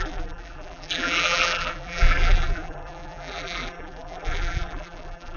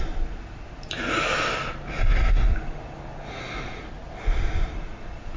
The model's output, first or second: first